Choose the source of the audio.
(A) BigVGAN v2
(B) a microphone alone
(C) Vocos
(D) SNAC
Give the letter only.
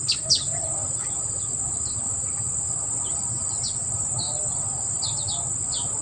B